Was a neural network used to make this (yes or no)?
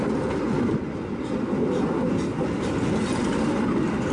no